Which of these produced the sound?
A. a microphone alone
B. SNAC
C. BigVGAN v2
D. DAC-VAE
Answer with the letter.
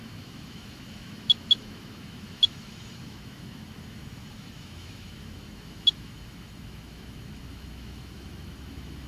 D